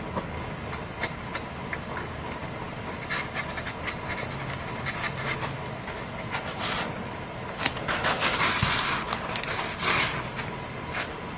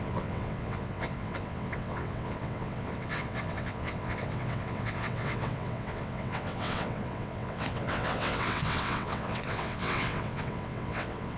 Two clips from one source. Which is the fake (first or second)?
second